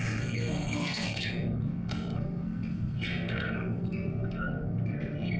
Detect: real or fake fake